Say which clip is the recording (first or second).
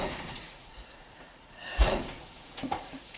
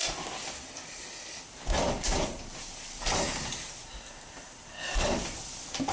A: second